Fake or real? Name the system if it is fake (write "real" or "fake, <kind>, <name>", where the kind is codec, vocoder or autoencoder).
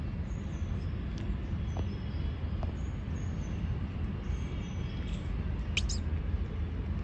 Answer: real